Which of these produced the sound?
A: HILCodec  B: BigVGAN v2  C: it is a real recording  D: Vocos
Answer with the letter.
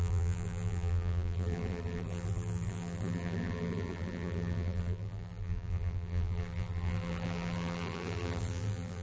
B